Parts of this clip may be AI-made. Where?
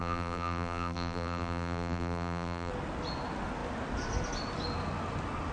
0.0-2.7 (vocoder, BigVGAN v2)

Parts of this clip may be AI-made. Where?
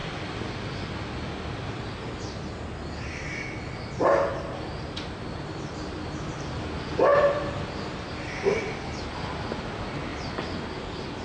0.0-1.1 (vocoder, BigVGAN v2); 4.3-6.3